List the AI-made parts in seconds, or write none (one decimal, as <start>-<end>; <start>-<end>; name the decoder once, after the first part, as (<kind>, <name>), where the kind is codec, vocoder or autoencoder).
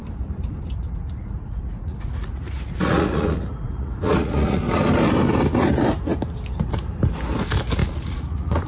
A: 0.8-4.6 (vocoder, Vocos); 7.8-8.7